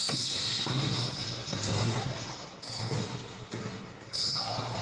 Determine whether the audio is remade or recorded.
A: remade